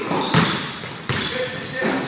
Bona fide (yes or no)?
yes